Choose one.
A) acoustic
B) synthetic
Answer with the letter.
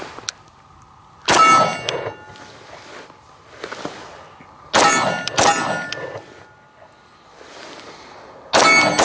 A